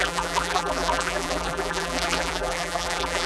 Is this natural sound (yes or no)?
no